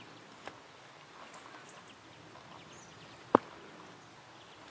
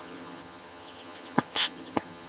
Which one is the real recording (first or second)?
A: first